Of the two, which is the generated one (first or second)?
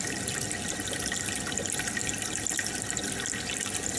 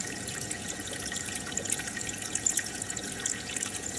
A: second